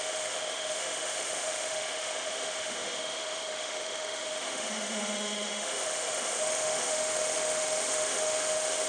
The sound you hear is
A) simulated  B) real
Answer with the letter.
A